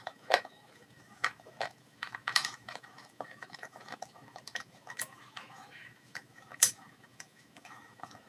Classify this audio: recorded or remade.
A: remade